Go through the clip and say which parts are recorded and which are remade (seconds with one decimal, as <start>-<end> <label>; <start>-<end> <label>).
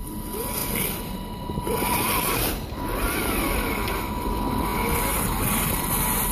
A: 0.0-6.3 recorded